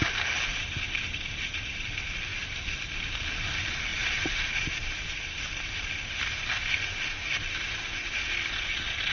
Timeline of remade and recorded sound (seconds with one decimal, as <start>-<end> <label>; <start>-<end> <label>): 0.0-9.1 recorded